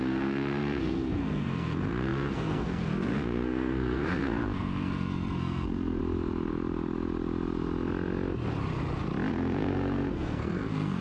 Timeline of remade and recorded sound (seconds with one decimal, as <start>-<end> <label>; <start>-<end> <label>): 0.0-6.0 remade; 6.0-9.3 recorded; 9.3-11.0 remade

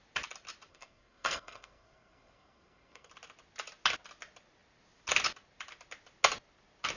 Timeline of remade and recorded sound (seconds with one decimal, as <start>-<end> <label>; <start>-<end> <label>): 0.0-0.7 recorded; 0.7-3.1 remade; 3.1-7.0 recorded